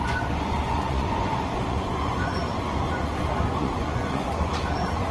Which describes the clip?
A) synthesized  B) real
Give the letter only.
A